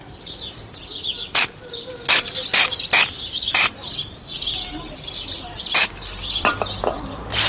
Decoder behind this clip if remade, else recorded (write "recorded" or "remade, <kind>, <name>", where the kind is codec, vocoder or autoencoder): recorded